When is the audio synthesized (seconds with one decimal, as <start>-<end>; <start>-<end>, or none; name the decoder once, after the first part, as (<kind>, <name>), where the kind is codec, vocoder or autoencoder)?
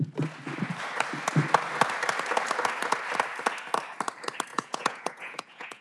4.5-5.8 (vocoder, Vocos)